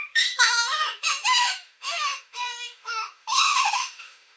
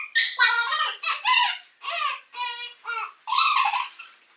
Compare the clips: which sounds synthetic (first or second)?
first